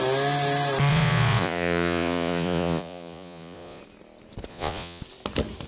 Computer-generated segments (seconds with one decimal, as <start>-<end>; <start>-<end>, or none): 0.9-3.8; 4.5-5.0

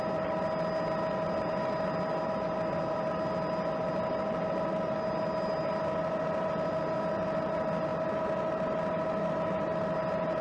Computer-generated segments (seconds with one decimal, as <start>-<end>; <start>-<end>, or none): none